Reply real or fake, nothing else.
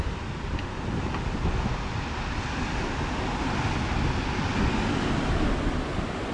real